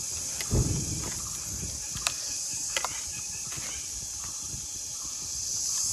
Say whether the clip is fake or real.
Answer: real